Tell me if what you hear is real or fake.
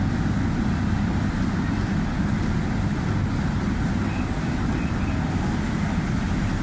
real